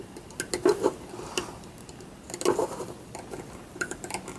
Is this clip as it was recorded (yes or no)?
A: yes